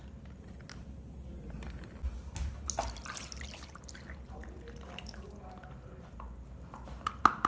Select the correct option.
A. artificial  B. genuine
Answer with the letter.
B